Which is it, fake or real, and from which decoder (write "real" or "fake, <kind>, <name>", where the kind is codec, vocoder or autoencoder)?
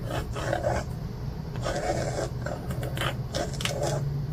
real